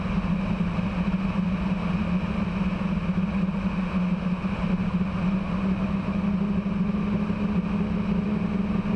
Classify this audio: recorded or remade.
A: recorded